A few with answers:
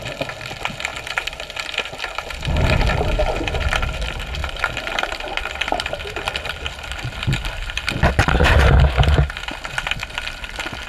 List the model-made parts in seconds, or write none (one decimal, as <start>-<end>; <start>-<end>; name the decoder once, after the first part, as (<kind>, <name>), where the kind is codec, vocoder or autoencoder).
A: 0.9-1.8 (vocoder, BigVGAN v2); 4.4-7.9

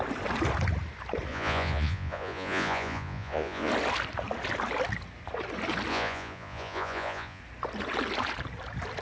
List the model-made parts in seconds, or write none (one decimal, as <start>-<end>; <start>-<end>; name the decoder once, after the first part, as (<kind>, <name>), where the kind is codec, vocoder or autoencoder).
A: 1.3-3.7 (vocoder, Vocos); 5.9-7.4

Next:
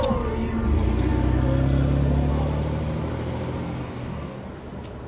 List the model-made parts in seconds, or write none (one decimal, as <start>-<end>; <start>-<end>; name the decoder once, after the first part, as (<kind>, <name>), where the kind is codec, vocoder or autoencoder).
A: 3.8-4.4 (codec, DAC)

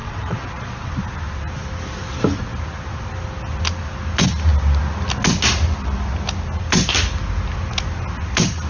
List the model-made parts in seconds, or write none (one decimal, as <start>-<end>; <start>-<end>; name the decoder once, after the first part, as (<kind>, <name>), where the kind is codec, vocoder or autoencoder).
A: 0.0-0.9 (vocoder, Vocos)

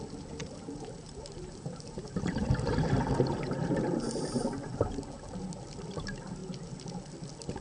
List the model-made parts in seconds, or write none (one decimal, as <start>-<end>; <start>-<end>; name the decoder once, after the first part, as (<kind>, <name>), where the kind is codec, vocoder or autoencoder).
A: 0.4-5.0 (vocoder, BigVGAN v2)

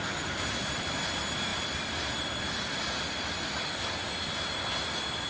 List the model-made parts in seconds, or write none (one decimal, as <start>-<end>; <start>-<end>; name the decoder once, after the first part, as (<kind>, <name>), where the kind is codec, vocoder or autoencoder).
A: 1.5-3.7 (vocoder, BigVGAN v2)

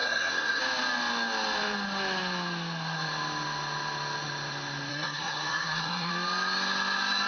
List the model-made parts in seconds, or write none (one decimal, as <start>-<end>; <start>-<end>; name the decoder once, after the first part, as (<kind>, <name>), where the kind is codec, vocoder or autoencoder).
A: 0.0-0.6 (codec, SNAC); 4.9-6.1